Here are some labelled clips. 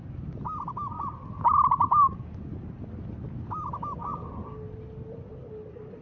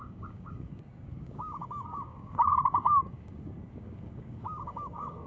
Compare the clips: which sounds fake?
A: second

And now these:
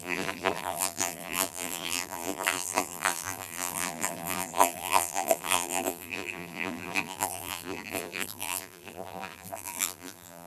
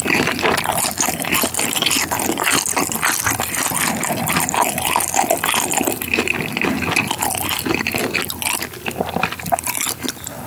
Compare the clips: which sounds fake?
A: first